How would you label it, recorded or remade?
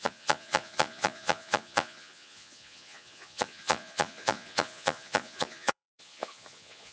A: remade